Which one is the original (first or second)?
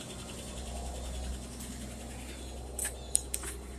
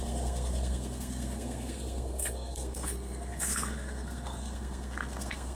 first